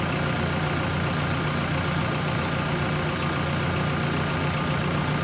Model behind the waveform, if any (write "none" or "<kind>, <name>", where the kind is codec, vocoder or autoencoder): none